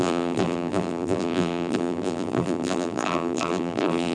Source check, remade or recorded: remade